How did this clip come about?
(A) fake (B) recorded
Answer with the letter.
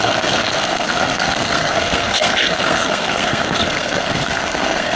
A